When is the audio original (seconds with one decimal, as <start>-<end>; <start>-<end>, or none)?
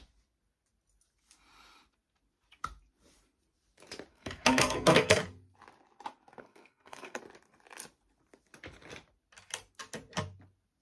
0.0-4.1; 5.2-6.4; 7.2-10.8